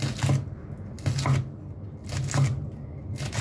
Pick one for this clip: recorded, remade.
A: recorded